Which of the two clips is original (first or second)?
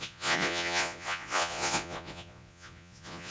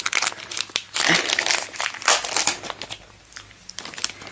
second